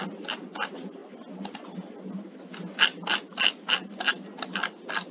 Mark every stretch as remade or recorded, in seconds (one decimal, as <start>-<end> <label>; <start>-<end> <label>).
0.0-5.1 recorded